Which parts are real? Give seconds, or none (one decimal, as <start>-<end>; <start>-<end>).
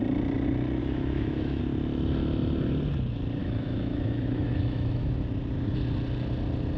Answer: 0.0-0.8; 1.6-3.4; 5.1-6.8